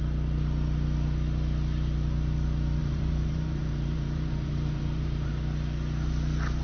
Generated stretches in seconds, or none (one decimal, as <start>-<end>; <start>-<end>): 2.8-5.3